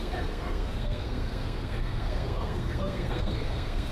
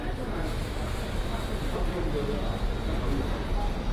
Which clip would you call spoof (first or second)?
first